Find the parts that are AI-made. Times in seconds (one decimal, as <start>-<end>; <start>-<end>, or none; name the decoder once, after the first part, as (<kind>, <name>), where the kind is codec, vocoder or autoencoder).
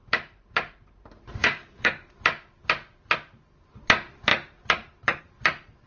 1.4-1.9 (codec, DAC)